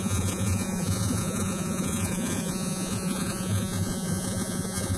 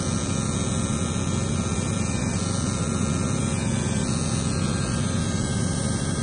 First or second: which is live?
second